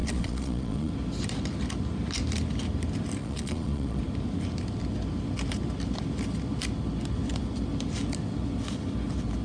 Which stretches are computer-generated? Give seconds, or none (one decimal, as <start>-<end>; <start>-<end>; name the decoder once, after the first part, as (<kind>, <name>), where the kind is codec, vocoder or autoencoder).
0.0-0.9 (vocoder, Vocos); 3.2-4.0